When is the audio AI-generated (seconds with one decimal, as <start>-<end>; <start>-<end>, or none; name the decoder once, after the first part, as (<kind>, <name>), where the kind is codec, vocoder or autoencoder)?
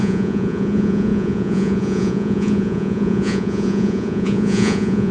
0.0-5.1 (vocoder, Vocos)